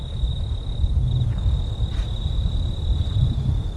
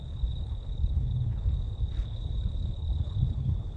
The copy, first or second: second